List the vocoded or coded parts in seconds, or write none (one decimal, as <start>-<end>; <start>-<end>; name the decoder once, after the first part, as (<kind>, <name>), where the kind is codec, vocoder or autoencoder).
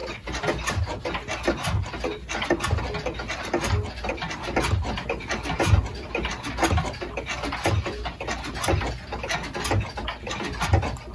none